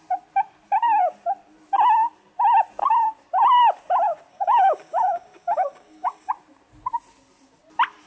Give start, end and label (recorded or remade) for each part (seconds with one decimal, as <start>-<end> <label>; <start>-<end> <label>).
0.0-4.3 recorded; 4.3-6.3 remade; 6.3-8.1 recorded

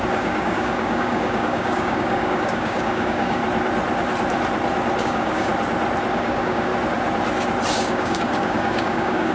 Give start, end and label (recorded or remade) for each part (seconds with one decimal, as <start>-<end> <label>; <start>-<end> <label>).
0.0-3.4 remade; 3.4-5.0 recorded; 5.0-5.5 remade; 5.5-6.1 recorded; 6.1-6.7 remade; 6.7-7.7 recorded; 7.7-9.3 remade